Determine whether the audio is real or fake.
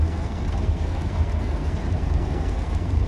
fake